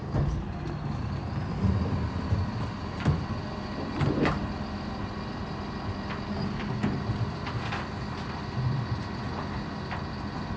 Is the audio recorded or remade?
recorded